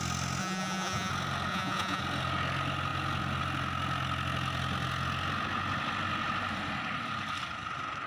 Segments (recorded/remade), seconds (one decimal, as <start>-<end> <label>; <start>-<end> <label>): 0.0-0.4 recorded; 0.4-1.1 remade; 1.1-1.5 recorded; 1.5-2.0 remade; 2.0-8.1 recorded